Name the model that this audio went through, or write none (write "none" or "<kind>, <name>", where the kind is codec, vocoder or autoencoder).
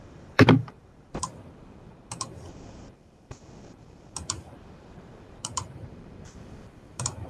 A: vocoder, BigVGAN v2